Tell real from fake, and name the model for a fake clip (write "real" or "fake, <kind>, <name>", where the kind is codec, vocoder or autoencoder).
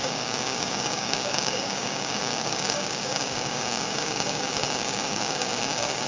fake, codec, DAC